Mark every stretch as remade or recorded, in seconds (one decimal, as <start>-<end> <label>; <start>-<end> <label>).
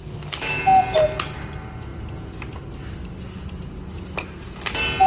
0.0-0.6 remade; 0.6-5.1 recorded